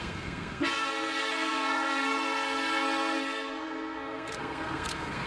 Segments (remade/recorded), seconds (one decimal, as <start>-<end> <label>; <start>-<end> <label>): 0.0-5.3 remade